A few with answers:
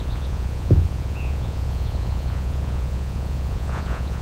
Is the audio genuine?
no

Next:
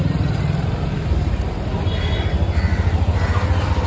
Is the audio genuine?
yes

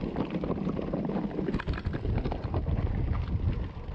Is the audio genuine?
yes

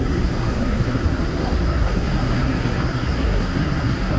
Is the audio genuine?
no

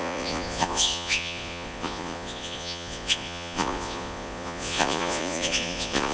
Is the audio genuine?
no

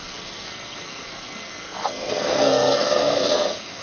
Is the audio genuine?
no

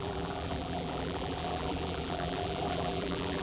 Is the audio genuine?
no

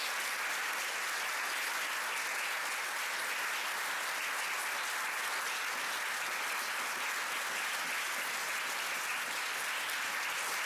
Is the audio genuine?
yes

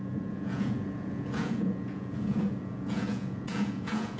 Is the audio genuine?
no